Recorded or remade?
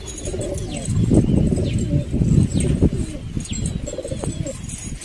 recorded